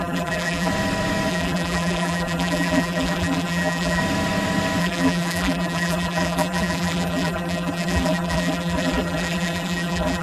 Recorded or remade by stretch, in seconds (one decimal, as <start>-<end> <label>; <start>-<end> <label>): 0.0-0.7 remade; 0.7-1.3 recorded; 1.3-4.0 remade; 4.0-4.8 recorded; 4.8-10.2 remade